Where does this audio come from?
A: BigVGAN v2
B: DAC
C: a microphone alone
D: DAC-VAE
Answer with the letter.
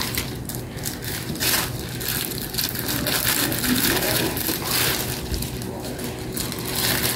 C